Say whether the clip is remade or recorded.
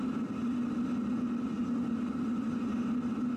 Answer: recorded